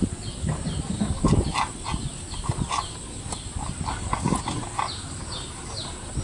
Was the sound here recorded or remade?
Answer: recorded